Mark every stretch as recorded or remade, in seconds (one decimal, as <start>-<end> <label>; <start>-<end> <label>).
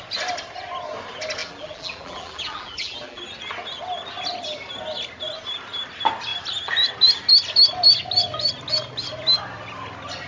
0.0-1.4 recorded; 1.4-3.2 remade; 3.2-10.3 recorded